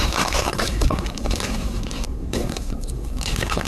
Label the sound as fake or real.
fake